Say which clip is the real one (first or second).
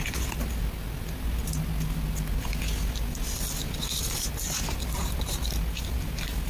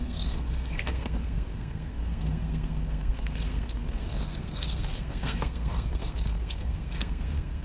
first